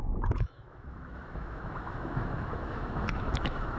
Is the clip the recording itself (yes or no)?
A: no